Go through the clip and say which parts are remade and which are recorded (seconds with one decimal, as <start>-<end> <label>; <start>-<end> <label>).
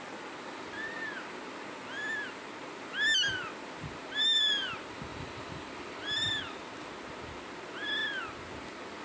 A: 0.0-5.1 recorded; 5.1-6.4 remade; 6.4-9.0 recorded